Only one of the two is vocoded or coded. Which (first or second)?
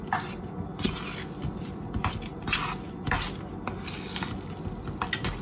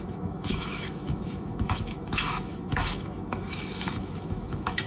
second